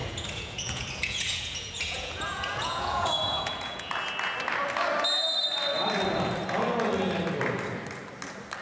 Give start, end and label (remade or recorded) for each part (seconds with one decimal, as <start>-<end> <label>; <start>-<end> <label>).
0.0-3.9 remade; 3.9-8.6 recorded